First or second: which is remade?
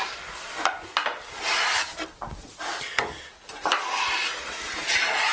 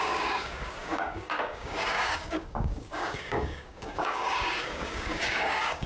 second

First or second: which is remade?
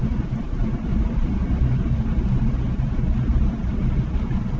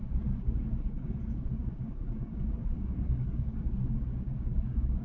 second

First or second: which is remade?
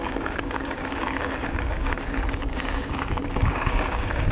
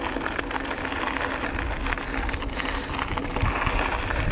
first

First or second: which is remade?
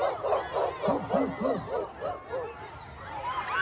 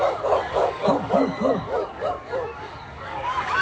second